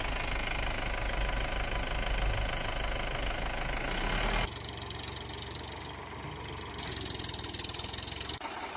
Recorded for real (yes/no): yes